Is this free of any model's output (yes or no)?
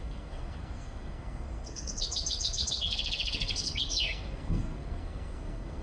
no